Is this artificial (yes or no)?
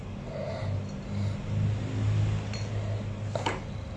no